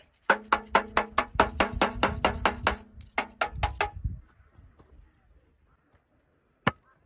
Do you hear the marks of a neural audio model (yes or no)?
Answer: no